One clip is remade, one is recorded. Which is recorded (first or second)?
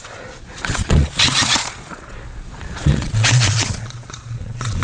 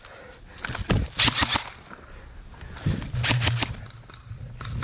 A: second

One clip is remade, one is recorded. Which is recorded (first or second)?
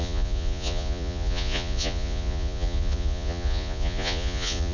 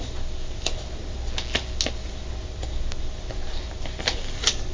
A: second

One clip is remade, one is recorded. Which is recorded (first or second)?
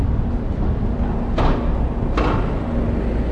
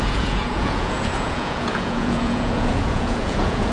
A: first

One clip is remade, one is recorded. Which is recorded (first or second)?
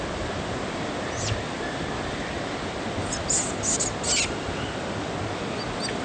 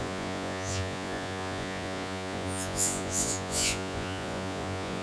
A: first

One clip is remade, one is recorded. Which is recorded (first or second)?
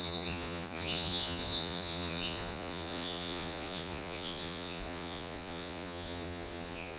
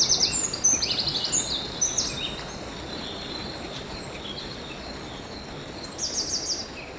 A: second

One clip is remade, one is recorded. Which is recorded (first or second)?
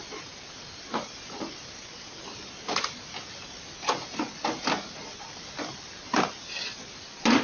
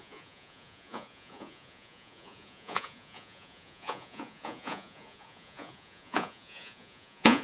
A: first